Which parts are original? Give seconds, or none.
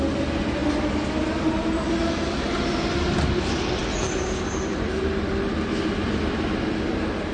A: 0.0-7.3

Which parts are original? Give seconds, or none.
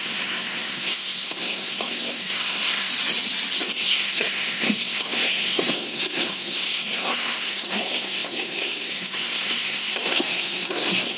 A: 2.9-3.7